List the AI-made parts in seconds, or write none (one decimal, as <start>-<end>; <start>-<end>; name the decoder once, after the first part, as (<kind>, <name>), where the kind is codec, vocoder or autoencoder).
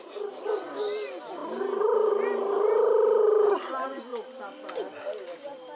1.4-2.1 (vocoder, BigVGAN v2)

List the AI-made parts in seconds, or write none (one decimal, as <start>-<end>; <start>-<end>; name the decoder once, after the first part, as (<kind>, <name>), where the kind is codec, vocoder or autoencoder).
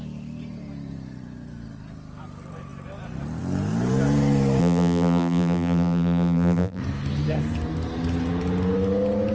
4.6-6.8 (vocoder, BigVGAN v2)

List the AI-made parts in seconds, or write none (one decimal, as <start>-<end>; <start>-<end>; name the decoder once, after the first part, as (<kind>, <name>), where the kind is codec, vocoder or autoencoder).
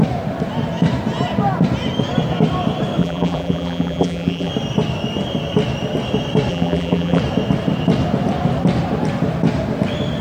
3.0-4.5 (vocoder, BigVGAN v2); 6.5-7.2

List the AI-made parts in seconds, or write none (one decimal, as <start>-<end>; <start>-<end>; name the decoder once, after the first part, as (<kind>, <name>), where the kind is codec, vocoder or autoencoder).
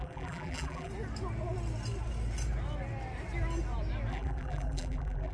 0.0-0.9 (vocoder, BigVGAN v2); 4.1-5.3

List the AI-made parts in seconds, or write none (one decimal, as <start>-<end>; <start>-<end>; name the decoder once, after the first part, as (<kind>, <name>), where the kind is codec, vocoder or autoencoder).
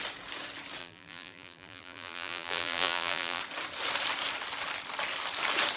0.8-3.4 (vocoder, BigVGAN v2)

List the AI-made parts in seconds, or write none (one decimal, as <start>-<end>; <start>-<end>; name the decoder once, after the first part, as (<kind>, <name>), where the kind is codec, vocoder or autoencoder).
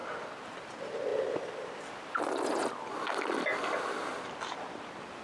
0.0-0.7 (vocoder, BigVGAN v2); 1.1-4.2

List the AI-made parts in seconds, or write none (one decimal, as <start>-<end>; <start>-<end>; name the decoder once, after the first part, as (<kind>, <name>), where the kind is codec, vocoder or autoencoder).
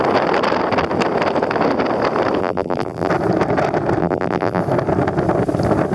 2.4-3.1 (vocoder, BigVGAN v2); 4.0-4.6